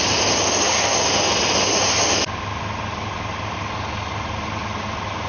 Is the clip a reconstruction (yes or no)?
no